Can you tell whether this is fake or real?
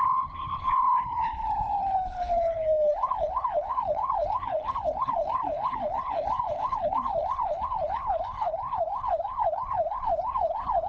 fake